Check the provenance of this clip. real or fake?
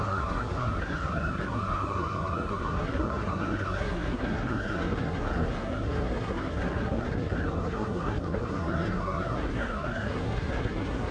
fake